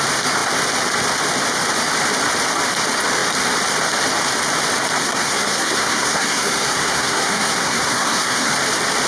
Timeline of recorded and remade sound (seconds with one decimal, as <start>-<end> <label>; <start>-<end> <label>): 0.0-5.0 recorded; 5.0-8.5 remade; 8.5-9.1 recorded